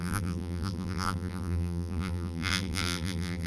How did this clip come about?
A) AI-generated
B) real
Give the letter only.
A